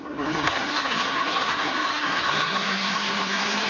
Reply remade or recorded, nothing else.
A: remade